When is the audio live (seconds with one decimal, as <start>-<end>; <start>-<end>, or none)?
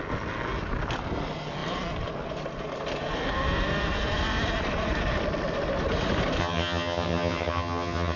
0.0-6.4